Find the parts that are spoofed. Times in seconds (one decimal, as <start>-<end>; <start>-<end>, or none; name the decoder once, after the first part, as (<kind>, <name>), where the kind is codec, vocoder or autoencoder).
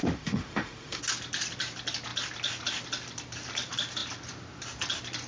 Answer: 0.0-1.0 (autoencoder, DAC-VAE)